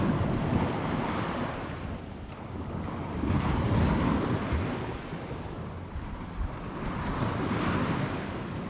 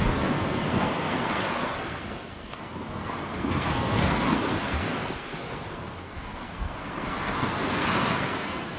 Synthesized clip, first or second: second